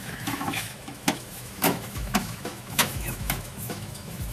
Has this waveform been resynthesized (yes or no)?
yes